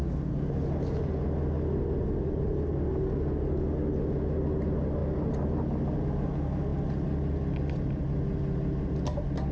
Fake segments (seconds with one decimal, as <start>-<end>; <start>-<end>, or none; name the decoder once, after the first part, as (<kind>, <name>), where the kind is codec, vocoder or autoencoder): none